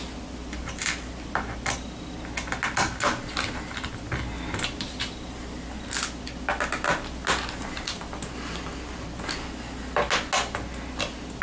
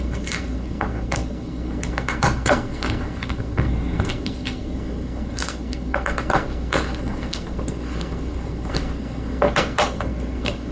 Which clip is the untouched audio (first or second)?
first